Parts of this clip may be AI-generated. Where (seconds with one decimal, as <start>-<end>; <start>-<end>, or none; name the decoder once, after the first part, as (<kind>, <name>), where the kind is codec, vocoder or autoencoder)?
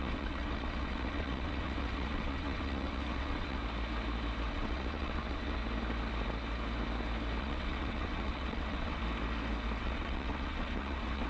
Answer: 0.0-3.6 (vocoder, WaveNeXt); 4.5-5.6; 7.4-9.0; 9.8-11.3